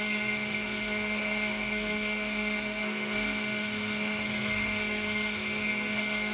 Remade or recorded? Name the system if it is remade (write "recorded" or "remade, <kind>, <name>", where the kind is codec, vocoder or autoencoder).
remade, codec, SNAC